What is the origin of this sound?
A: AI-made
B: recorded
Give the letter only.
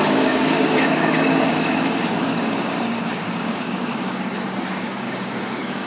A